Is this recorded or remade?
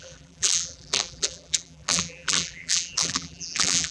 remade